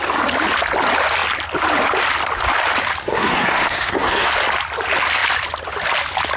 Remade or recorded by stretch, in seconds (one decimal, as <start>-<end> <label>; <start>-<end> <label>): 0.0-3.0 recorded; 3.0-4.3 remade; 4.3-6.4 recorded